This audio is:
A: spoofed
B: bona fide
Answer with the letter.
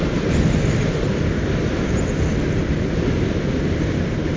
B